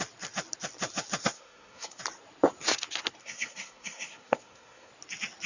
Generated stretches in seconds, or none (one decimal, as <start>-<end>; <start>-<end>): 1.2-2.0; 3.2-4.9